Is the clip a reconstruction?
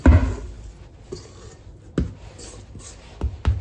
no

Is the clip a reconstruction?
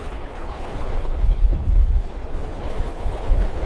yes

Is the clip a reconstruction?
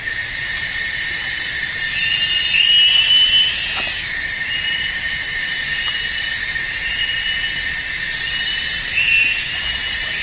no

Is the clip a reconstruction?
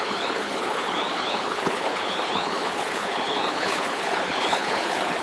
yes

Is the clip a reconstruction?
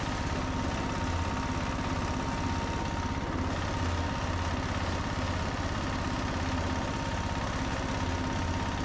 no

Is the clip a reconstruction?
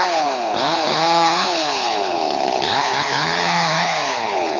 yes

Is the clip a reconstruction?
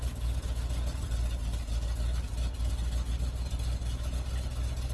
no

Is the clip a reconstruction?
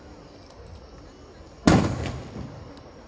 no